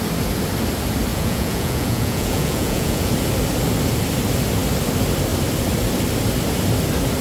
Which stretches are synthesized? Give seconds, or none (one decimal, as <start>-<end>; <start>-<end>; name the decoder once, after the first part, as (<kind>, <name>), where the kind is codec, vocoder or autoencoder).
1.1-3.1 (vocoder, Vocos)